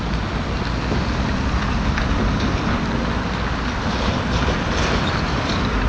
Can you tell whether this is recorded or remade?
recorded